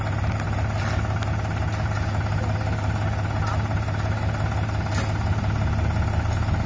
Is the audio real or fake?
real